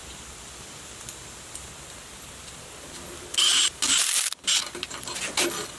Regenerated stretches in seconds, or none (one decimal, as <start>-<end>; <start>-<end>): none